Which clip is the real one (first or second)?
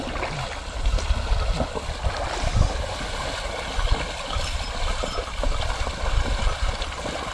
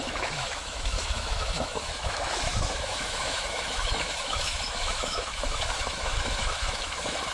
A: first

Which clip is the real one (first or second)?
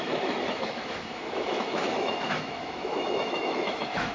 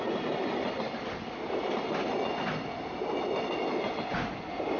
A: second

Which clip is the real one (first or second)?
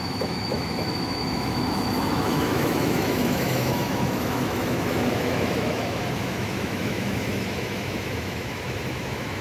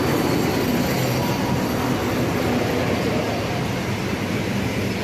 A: second